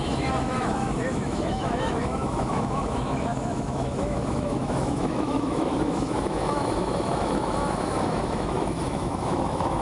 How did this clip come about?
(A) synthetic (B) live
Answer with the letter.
A